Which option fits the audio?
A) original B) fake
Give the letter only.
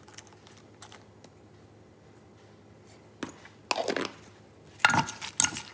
A